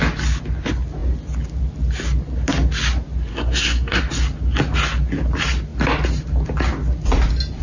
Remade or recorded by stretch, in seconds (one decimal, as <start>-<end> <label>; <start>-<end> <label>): 0.0-3.3 recorded; 3.3-4.0 remade; 4.0-7.6 recorded